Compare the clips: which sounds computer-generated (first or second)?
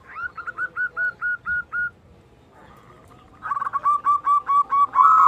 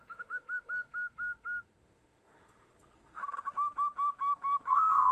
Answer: second